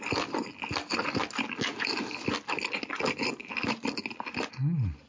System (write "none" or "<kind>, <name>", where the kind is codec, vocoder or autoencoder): none